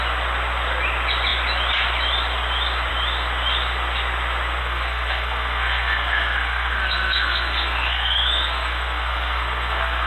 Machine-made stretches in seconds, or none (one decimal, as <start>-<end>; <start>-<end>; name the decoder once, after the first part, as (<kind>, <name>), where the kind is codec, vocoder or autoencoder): 4.6-10.1 (codec, SNAC)